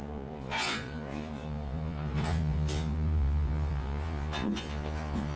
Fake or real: fake